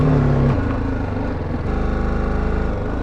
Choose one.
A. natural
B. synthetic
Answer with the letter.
A